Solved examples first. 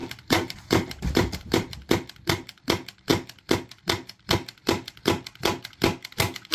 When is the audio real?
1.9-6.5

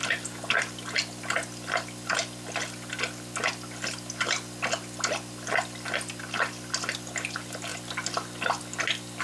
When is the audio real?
0.0-9.2

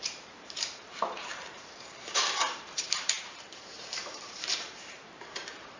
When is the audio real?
none

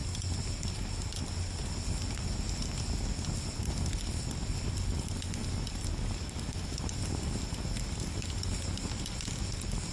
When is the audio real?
0.0-9.9